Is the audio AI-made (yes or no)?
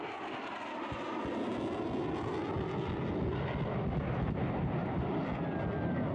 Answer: no